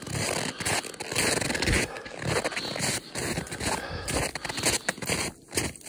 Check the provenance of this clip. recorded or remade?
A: recorded